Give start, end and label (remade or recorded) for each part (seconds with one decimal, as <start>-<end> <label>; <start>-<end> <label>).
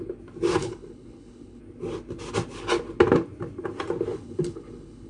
0.0-0.6 recorded; 0.6-1.6 remade; 1.6-4.1 recorded; 4.1-5.1 remade